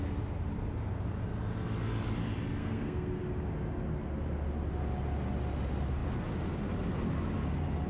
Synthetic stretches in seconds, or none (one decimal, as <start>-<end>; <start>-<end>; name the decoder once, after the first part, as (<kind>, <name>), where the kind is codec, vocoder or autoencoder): 2.6-3.2 (codec, SNAC)